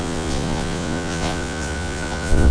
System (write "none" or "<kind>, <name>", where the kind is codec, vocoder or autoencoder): vocoder, Vocos